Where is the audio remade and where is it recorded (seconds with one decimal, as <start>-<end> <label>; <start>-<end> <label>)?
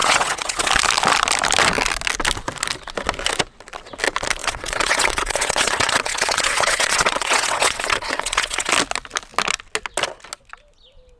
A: 0.0-0.7 remade; 0.7-4.4 recorded; 4.4-8.7 remade; 8.7-11.2 recorded